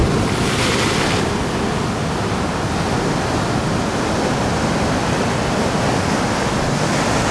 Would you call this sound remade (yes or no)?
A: no